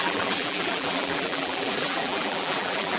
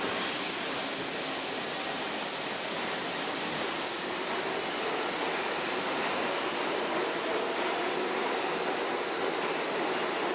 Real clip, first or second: second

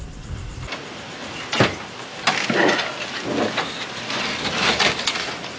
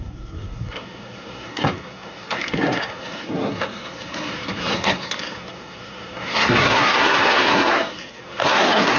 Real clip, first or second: first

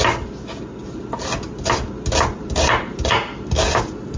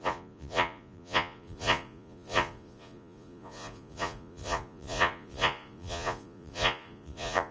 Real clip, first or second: first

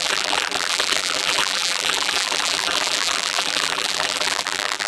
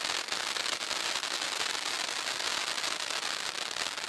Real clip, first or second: second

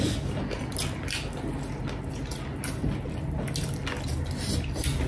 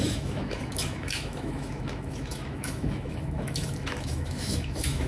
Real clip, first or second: first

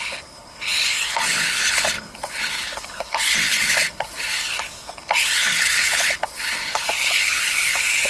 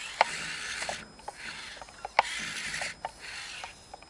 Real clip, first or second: second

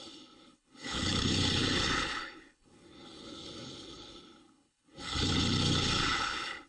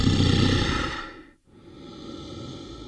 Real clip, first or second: second